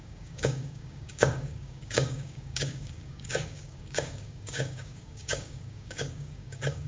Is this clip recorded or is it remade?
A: remade